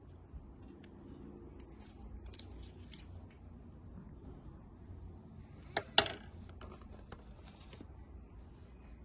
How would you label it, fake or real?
real